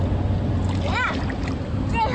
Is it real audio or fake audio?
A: real